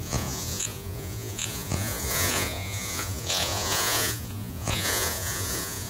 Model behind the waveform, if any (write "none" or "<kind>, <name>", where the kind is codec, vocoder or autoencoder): vocoder, Vocos